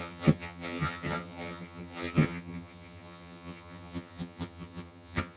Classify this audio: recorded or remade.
remade